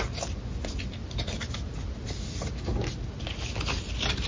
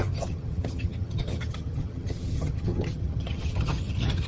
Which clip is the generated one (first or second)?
second